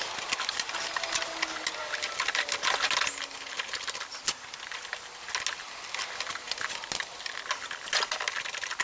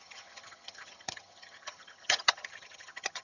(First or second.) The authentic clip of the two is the first